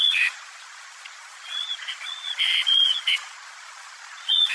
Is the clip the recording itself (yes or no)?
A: no